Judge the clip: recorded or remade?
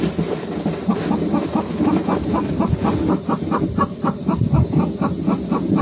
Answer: recorded